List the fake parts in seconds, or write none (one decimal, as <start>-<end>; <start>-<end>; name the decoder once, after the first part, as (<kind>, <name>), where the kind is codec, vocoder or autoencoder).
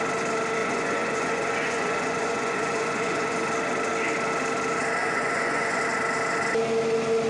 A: 0.6-3.4 (vocoder, Vocos); 5.0-5.8